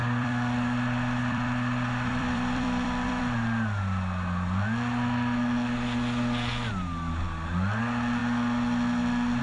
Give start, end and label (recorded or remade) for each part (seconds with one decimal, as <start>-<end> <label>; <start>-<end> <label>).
0.0-3.2 remade; 3.2-9.4 recorded

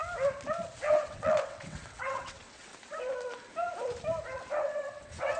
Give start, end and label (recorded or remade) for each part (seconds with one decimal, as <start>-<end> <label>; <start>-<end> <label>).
0.0-0.8 recorded; 0.8-2.7 remade; 2.7-4.6 recorded; 4.6-5.4 remade

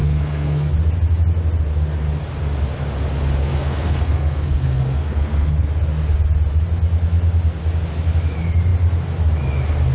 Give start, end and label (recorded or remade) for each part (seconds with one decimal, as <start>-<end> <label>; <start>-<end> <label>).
0.0-0.7 remade; 0.7-3.4 recorded; 3.4-5.7 remade; 5.7-9.9 recorded

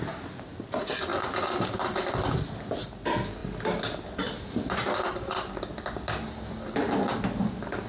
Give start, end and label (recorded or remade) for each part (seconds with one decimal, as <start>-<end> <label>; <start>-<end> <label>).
0.0-7.9 recorded

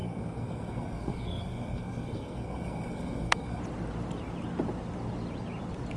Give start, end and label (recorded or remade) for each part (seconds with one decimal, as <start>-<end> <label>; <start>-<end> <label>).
0.0-3.6 remade; 3.6-6.0 recorded

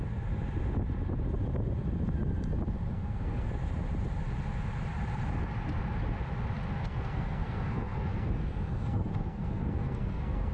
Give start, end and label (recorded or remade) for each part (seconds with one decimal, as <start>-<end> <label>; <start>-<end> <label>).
0.0-2.9 recorded; 2.9-3.5 remade; 3.5-6.8 recorded; 6.8-10.5 remade